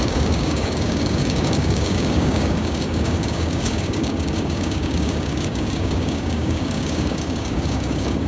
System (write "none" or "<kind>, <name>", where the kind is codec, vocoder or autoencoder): codec, DAC